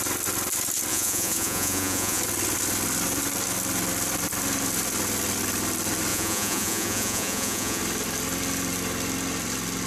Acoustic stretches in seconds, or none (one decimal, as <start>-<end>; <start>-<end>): 0.0-0.9; 2.2-6.1; 7.8-9.9